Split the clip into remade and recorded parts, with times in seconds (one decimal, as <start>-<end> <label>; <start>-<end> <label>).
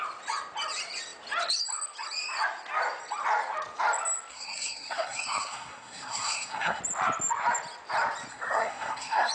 0.0-4.3 recorded; 4.3-6.8 remade; 6.8-8.3 recorded; 8.3-9.3 remade